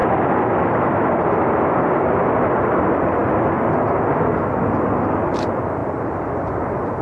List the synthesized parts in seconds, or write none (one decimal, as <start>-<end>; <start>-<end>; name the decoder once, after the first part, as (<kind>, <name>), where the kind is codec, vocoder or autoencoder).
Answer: 5.8-7.0 (vocoder, BigVGAN v2)